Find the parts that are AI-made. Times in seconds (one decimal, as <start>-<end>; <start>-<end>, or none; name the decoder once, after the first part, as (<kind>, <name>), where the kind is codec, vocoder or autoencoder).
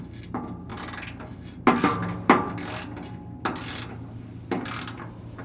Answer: none